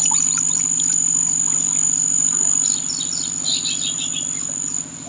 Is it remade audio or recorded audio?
recorded